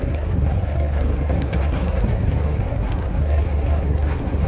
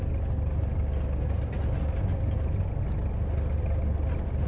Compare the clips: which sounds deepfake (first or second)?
first